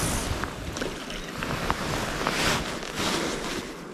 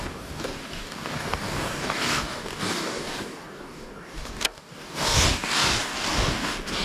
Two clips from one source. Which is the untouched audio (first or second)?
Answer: first